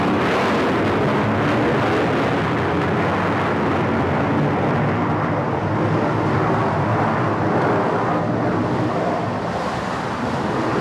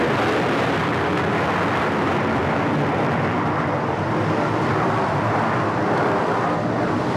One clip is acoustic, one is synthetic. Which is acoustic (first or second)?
first